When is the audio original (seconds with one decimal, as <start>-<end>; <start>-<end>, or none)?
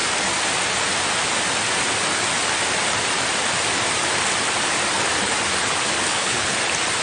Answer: 0.0-6.1; 6.6-7.0